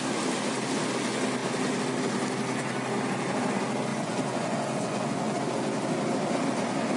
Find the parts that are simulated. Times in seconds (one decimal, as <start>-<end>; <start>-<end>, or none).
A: 3.9-5.4